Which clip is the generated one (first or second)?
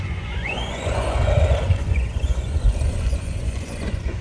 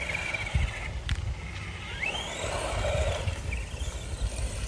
first